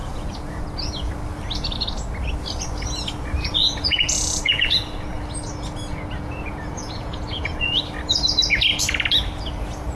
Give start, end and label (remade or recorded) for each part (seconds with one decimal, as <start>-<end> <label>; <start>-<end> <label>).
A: 0.0-1.1 remade; 1.1-3.4 recorded; 3.4-5.2 remade; 5.2-5.9 recorded; 5.9-7.8 remade; 7.8-9.9 recorded